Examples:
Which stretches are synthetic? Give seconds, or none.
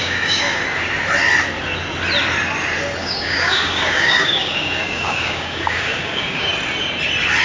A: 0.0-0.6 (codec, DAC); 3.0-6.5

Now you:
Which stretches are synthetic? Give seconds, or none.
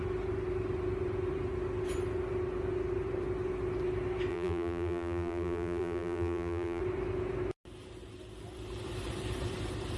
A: 4.3-6.8 (vocoder, BigVGAN v2)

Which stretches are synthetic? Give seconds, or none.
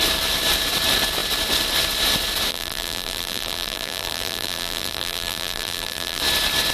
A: 2.5-6.2 (vocoder, BigVGAN v2)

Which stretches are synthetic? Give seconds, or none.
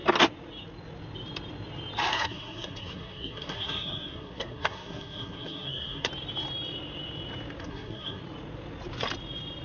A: 2.1-6.1 (codec, SNAC); 7.6-8.2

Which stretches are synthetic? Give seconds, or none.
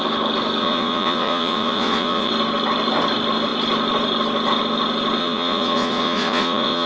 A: 0.6-2.3 (vocoder, Vocos); 5.2-6.9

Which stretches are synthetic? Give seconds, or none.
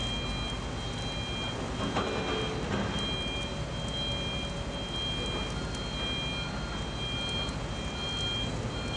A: none